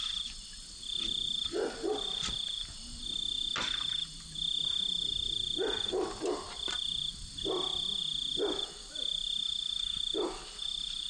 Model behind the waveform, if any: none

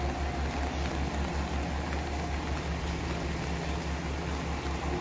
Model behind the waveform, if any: none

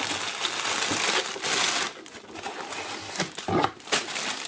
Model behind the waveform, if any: none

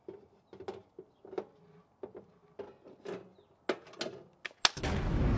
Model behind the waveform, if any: none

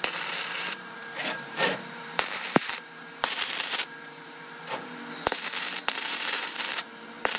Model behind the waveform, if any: vocoder, BigVGAN v2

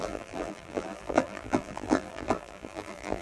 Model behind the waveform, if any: vocoder, BigVGAN v2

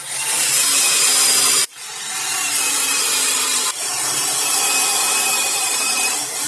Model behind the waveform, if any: vocoder, BigVGAN v2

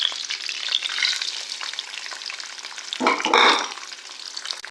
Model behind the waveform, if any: none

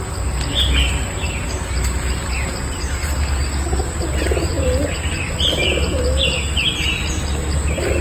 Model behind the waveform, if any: none